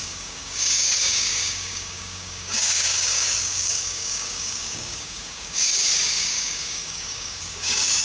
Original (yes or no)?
no